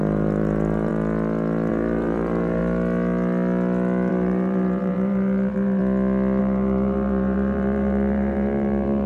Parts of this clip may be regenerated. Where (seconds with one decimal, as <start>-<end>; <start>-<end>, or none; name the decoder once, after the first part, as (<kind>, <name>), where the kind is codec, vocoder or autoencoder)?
0.0-0.9 (vocoder, BigVGAN v2); 1.7-2.6; 4.1-5.8; 6.4-9.1

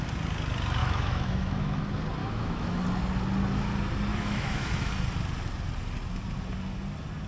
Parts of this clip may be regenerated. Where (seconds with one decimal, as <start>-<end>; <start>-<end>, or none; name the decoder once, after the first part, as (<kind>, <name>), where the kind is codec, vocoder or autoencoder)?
0.8-1.8 (autoencoder, DAC-VAE); 2.2-2.8; 4.1-4.9

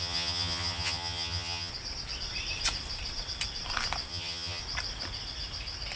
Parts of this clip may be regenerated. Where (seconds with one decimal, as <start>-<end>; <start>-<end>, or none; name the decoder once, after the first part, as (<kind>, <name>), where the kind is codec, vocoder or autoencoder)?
0.0-1.7 (vocoder, HiFi-GAN); 4.1-4.6